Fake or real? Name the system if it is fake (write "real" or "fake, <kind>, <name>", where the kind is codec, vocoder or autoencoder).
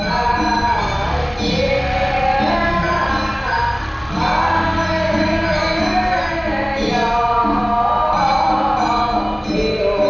real